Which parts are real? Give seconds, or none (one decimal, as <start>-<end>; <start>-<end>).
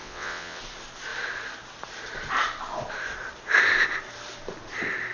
0.6-5.1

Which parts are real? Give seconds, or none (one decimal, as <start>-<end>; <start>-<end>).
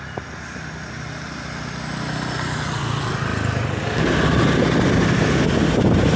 0.0-6.2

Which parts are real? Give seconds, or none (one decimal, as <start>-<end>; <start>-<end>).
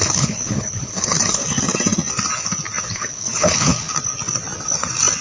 1.4-2.9; 3.9-5.2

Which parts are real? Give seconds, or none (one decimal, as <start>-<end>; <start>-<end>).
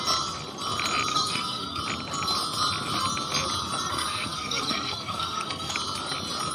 0.0-1.1; 1.8-3.9; 5.7-6.5